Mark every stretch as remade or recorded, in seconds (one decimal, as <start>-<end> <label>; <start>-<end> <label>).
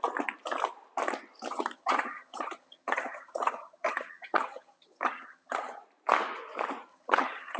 0.0-1.5 recorded; 1.5-5.8 remade; 5.8-6.9 recorded; 6.9-7.6 remade